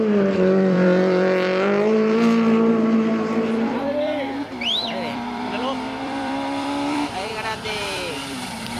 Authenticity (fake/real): fake